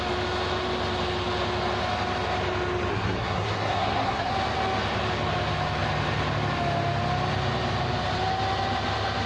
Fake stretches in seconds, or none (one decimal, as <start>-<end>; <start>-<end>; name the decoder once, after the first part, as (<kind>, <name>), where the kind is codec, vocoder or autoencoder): 2.9-4.3 (codec, SNAC)